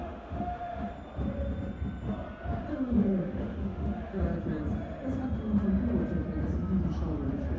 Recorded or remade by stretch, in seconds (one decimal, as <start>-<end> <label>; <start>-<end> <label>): 0.0-0.9 remade; 0.9-2.7 recorded; 2.7-4.2 remade; 4.2-7.6 recorded